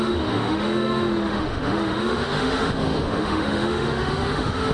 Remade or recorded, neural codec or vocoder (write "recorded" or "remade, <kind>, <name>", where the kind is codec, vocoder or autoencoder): remade, autoencoder, DAC-VAE